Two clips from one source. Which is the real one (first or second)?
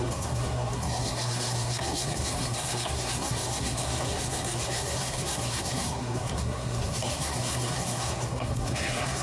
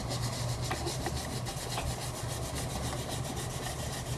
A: second